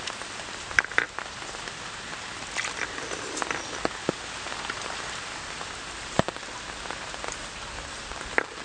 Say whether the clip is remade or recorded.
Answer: recorded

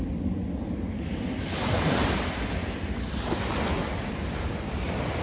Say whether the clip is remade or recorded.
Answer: recorded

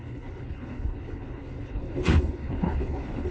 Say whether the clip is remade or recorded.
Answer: remade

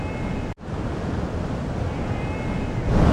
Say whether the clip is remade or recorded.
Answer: recorded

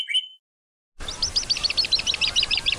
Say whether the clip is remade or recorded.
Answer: recorded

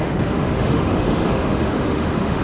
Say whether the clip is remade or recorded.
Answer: remade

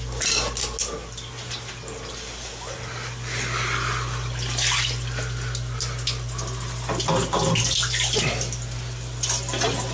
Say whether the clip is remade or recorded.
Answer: recorded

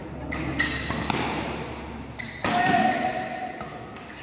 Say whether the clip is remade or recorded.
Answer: recorded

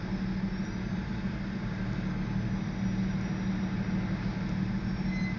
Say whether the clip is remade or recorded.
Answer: recorded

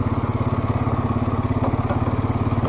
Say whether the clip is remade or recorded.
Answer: recorded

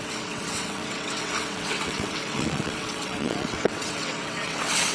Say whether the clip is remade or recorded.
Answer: remade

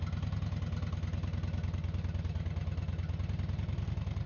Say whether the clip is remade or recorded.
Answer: recorded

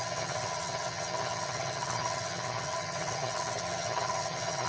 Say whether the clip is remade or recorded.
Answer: remade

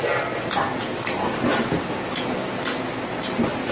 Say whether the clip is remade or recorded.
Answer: recorded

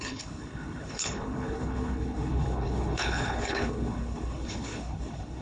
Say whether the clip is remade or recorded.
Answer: remade